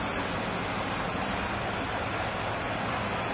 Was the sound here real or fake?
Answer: real